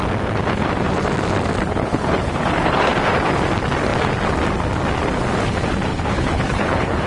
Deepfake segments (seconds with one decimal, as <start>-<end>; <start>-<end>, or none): 1.6-2.9; 5.9-7.1